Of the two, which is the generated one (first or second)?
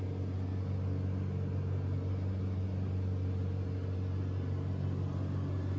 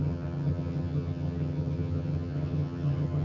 second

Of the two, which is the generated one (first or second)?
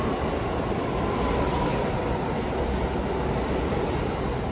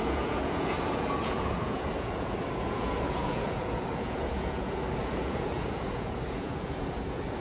second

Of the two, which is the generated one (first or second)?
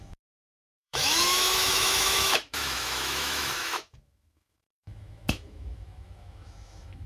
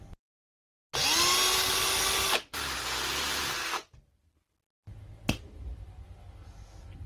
first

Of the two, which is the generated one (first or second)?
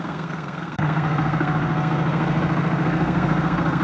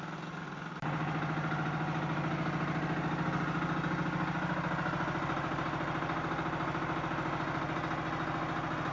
first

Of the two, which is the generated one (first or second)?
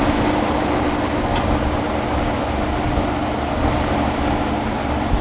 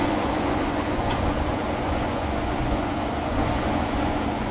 second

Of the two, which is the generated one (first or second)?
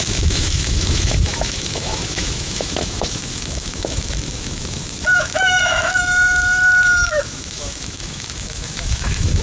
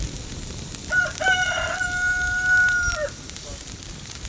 first